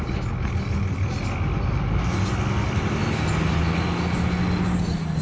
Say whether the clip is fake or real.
real